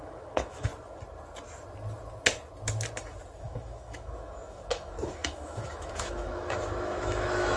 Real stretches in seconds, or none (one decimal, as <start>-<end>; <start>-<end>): 0.7-3.4